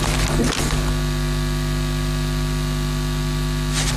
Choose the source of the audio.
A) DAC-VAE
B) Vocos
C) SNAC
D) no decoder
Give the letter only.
D